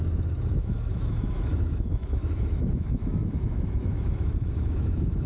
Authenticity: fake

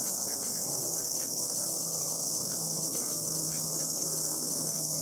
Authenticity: fake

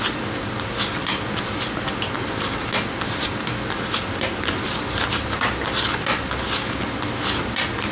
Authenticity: real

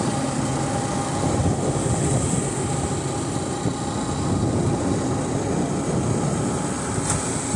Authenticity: real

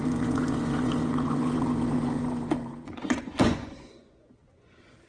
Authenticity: fake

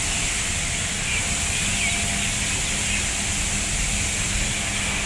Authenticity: real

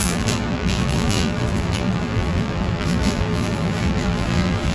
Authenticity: fake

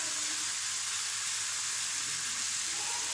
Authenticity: real